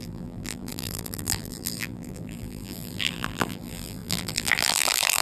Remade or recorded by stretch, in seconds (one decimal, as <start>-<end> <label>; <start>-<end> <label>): 0.0-5.2 remade